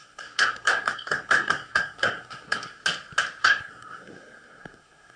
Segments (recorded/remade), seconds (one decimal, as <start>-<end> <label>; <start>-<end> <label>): 0.0-2.8 remade; 2.8-3.4 recorded; 3.4-5.2 remade